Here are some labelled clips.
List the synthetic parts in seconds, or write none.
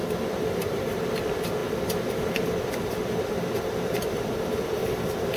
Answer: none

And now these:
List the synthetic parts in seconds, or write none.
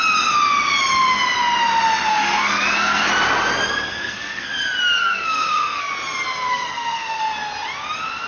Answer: 2.1-3.1; 3.9-4.5; 5.0-5.9; 6.5-7.3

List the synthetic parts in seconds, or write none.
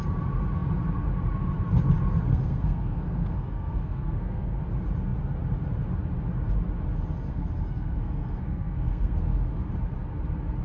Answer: 2.3-4.6; 7.3-9.7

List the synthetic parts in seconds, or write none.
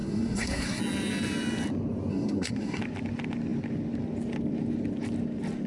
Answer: 0.0-0.8; 2.1-2.8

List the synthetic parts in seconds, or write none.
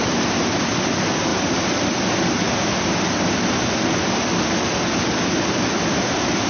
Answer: none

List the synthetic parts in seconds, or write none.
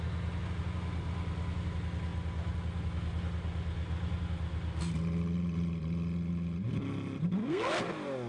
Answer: 7.4-7.9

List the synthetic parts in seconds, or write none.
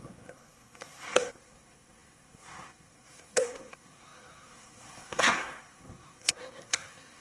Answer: 0.0-7.2